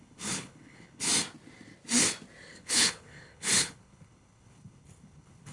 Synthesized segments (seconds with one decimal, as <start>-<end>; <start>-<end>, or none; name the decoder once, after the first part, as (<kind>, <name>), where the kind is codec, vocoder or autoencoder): 0.0-1.1 (codec, HILCodec); 2.5-5.5